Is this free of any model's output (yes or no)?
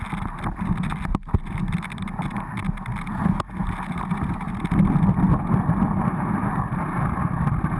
yes